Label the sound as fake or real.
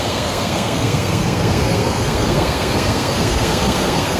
fake